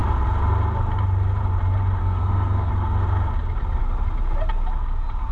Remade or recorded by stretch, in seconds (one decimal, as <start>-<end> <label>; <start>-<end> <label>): 0.0-2.0 recorded; 2.0-2.7 remade; 2.7-5.3 recorded